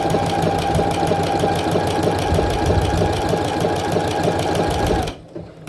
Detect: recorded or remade recorded